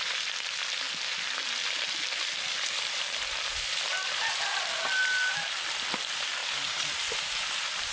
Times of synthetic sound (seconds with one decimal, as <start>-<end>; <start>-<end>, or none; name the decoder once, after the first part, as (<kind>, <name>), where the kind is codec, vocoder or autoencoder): 1.6-4.4 (vocoder, BigVGAN v2); 6.4-7.5